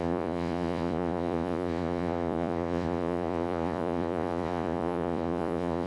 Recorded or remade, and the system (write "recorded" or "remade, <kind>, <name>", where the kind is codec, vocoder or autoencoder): remade, vocoder, Vocos